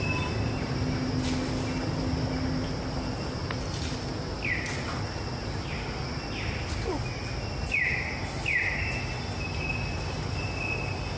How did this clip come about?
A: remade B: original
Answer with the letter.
B